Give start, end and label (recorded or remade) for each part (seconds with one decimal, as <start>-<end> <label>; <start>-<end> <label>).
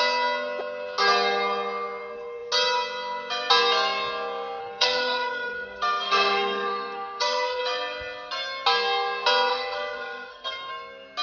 0.0-4.6 recorded; 4.6-7.6 remade; 7.6-9.5 recorded; 9.5-10.7 remade; 10.7-11.2 recorded